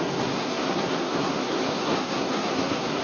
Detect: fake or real fake